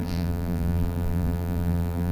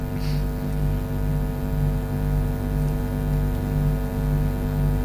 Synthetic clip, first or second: first